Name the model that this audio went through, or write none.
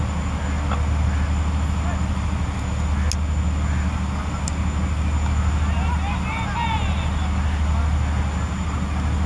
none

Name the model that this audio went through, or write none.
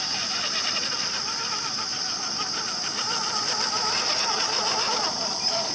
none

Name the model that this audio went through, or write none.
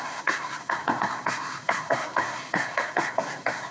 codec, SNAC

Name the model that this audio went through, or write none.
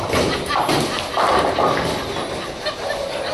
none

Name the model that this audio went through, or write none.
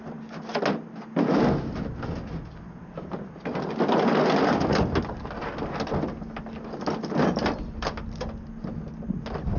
none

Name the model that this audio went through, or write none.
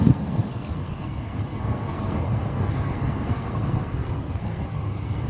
codec, SNAC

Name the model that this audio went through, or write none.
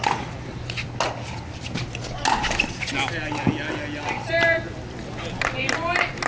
none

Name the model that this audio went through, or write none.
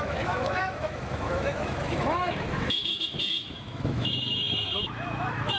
autoencoder, DAC-VAE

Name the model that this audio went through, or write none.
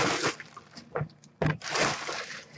none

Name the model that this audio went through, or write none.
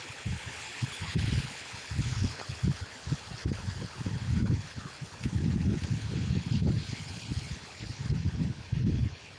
codec, HILCodec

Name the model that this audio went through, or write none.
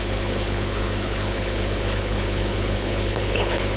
codec, HILCodec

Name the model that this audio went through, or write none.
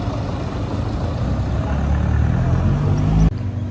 none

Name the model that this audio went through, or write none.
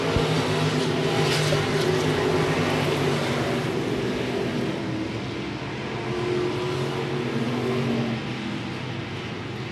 none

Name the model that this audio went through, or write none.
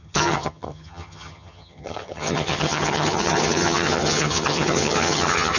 vocoder, HiFi-GAN